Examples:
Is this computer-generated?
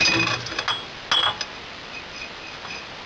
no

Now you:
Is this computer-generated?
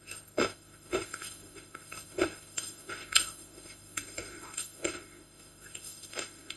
yes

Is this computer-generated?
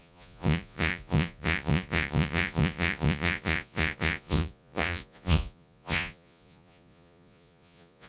yes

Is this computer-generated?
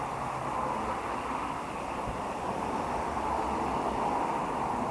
no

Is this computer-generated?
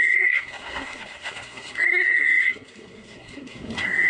yes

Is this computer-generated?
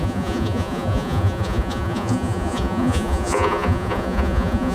yes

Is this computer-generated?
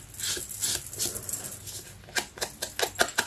no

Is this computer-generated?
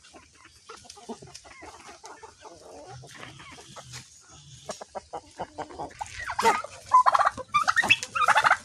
no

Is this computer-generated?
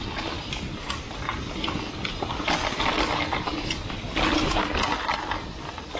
no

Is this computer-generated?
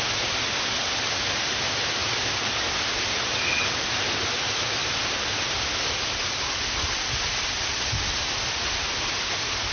no